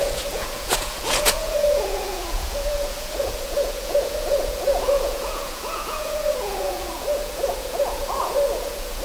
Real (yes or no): no